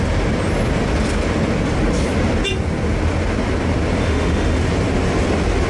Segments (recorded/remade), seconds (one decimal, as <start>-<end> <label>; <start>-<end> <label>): 0.0-4.0 recorded; 4.0-4.6 remade; 4.6-5.7 recorded